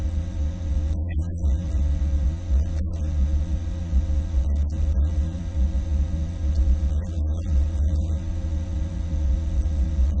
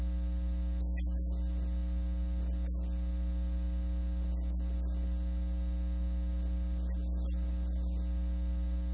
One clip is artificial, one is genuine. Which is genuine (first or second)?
second